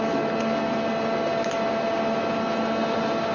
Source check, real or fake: real